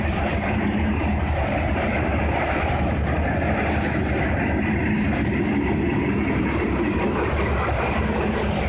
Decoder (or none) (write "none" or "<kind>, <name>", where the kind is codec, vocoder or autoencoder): none